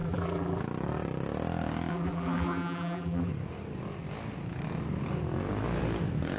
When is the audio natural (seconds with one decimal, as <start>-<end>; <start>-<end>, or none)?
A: 0.6-1.9; 3.3-6.4